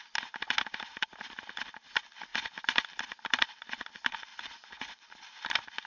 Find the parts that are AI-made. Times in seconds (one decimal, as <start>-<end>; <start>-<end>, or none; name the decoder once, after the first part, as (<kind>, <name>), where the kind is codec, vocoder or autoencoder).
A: 4.3-5.0 (vocoder, Vocos)